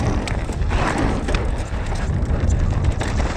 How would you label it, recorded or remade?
recorded